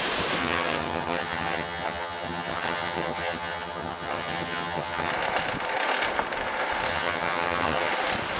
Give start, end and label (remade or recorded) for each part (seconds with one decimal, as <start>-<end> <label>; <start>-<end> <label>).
0.0-0.4 recorded; 0.4-5.1 remade; 5.1-6.9 recorded; 6.9-7.9 remade; 7.9-8.4 recorded